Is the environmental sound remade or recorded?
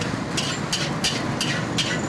recorded